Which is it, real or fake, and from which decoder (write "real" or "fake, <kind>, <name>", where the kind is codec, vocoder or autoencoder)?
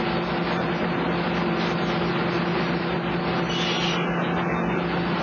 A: real